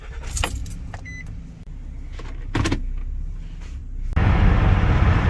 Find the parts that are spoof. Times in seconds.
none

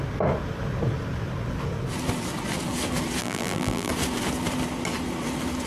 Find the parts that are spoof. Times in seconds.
3.2-3.9 (vocoder, BigVGAN v2)